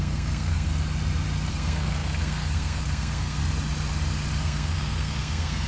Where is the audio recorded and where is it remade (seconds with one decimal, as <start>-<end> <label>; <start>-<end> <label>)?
0.0-0.7 remade; 0.7-1.5 recorded; 1.5-3.4 remade; 3.4-4.4 recorded; 4.4-5.7 remade